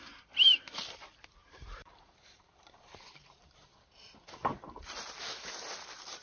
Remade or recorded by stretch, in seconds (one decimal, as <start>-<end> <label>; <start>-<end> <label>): 0.0-1.4 recorded; 1.4-5.1 remade; 5.1-6.2 recorded